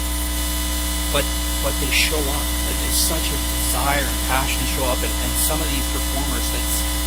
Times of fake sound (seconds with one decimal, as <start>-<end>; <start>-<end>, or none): 2.1-4.8